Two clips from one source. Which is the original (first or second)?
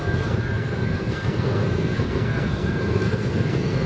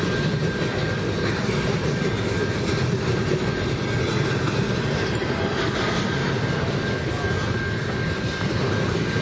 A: second